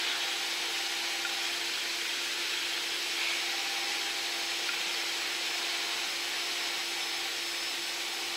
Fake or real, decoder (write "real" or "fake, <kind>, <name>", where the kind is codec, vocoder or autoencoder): real